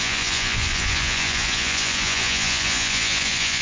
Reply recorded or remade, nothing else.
remade